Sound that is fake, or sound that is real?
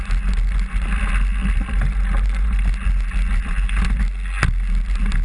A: real